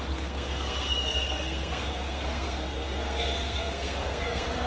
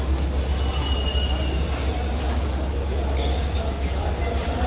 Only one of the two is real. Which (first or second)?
second